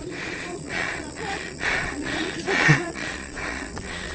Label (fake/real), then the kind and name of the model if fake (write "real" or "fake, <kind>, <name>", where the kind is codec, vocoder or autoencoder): fake, vocoder, Vocos